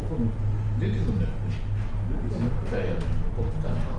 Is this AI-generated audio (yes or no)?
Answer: no